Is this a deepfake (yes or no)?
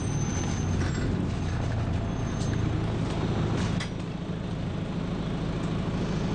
no